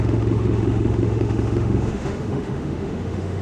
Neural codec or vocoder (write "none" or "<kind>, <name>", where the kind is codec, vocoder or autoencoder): autoencoder, DAC-VAE